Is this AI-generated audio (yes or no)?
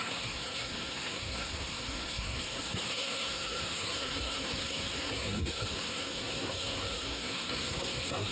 yes